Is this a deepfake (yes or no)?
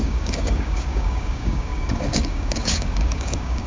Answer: yes